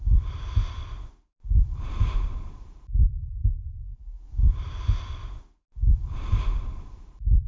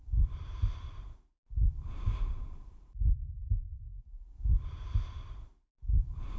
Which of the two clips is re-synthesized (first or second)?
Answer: second